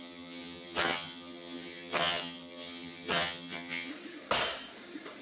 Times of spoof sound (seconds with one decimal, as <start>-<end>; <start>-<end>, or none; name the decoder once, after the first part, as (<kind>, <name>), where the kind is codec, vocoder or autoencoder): 0.0-3.9 (vocoder, HiFi-GAN)